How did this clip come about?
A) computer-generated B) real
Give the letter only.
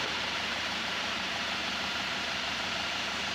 A